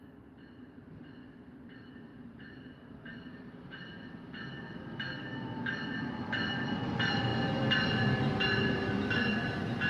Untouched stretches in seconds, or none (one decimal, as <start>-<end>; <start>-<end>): 0.0-2.1; 4.1-9.9